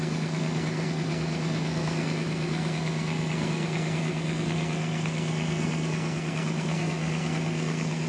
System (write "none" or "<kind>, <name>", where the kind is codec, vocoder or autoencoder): codec, SNAC